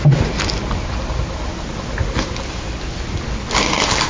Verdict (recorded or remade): recorded